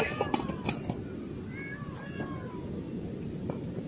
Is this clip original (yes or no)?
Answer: yes